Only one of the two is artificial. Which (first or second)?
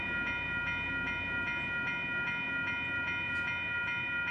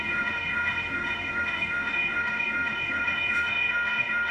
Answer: second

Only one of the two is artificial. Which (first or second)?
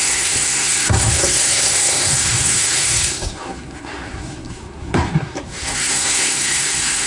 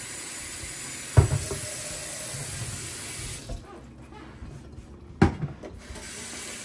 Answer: first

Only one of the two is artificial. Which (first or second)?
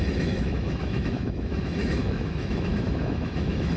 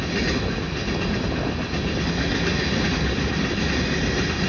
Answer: first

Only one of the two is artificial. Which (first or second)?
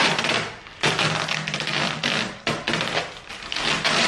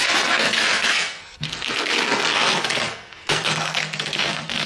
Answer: second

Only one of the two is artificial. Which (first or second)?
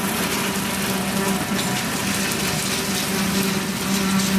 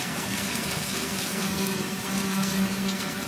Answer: second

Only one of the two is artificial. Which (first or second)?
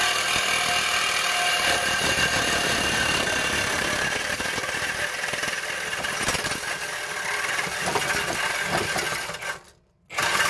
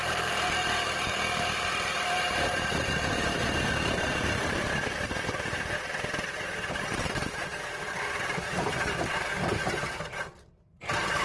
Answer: second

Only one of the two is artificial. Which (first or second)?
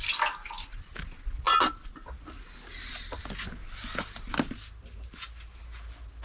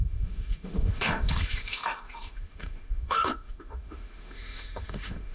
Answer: second